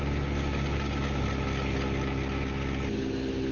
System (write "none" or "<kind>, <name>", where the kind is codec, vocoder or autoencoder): none